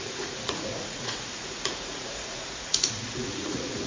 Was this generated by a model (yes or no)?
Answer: yes